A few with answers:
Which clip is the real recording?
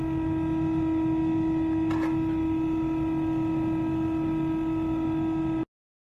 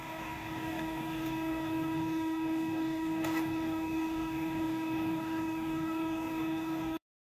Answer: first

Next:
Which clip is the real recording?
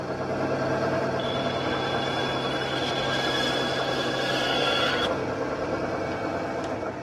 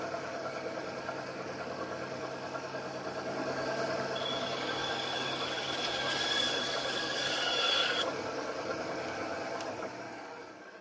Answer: first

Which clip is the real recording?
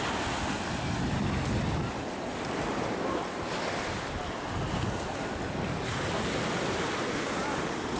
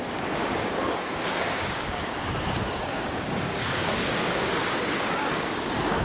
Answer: first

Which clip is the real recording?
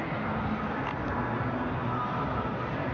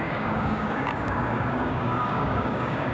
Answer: first